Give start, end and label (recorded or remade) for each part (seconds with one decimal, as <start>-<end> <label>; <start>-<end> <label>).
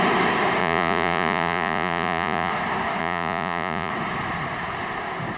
0.0-0.6 recorded; 0.6-2.5 remade; 2.5-3.0 recorded; 3.0-3.9 remade; 3.9-5.4 recorded